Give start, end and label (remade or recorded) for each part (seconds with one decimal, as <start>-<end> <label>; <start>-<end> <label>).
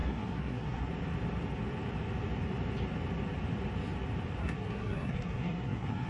0.0-0.9 remade; 0.9-4.4 recorded; 4.4-6.1 remade